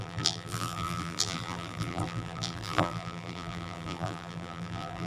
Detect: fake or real fake